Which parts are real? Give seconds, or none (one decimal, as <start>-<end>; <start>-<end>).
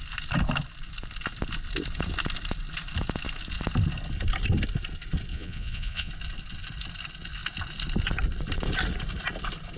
0.0-5.3; 6.1-9.8